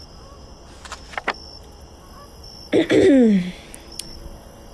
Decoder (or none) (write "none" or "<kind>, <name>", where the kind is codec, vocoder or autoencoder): none